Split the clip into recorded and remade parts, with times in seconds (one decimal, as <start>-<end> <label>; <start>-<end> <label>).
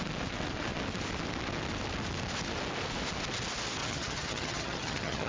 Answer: 0.0-3.8 recorded; 3.8-5.3 remade